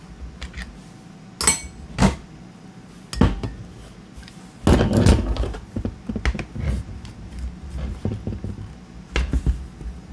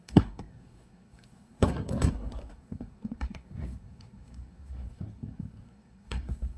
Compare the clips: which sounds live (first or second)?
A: first